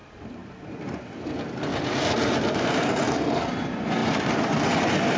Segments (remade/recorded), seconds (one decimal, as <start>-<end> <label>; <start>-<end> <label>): 0.0-0.9 remade; 0.9-1.7 recorded; 1.7-3.5 remade; 3.5-4.0 recorded; 4.0-5.2 remade

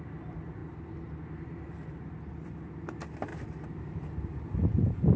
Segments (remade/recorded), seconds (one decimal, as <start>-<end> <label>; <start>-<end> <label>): 0.0-5.2 recorded

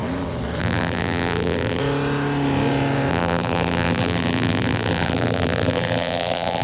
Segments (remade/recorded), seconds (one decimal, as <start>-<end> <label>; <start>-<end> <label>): 0.0-0.6 recorded; 0.6-1.8 remade; 1.8-3.1 recorded; 3.1-6.6 remade

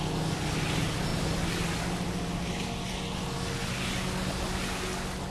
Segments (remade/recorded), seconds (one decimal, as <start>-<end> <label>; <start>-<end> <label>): 0.0-5.3 recorded

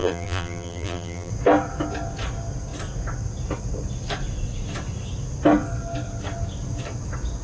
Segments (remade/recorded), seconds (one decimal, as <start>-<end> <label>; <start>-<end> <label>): 0.0-1.3 remade; 1.3-7.4 recorded